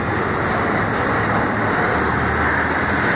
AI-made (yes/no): no